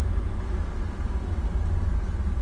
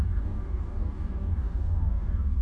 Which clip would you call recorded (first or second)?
first